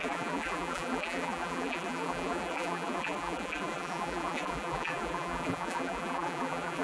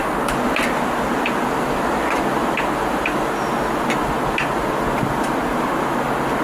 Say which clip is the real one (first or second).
second